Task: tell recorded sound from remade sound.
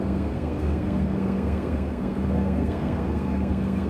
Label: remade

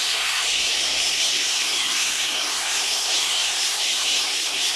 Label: remade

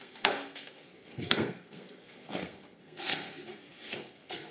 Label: remade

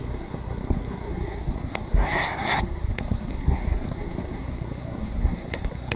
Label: remade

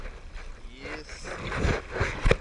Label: recorded